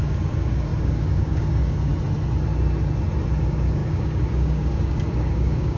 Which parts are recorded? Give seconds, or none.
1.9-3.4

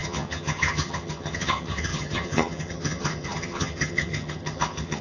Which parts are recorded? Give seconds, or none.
none

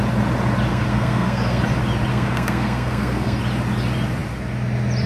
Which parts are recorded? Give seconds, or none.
0.0-0.7; 1.6-2.1; 3.4-5.1

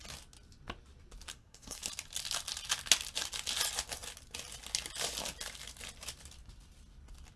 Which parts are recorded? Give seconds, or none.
0.0-1.3; 1.8-7.4

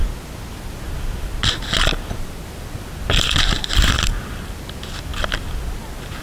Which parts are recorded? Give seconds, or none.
0.0-6.2

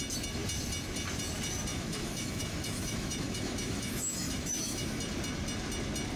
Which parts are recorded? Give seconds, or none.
0.0-1.7; 5.0-6.2

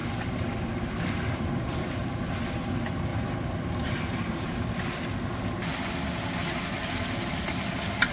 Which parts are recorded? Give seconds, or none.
2.2-3.1; 4.7-8.1